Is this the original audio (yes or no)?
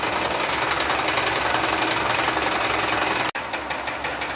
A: yes